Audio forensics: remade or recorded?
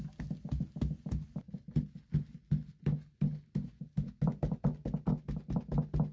recorded